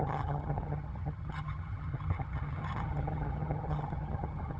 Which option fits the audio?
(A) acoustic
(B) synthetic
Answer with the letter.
B